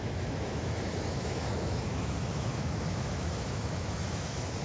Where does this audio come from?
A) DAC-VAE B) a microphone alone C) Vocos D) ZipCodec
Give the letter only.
A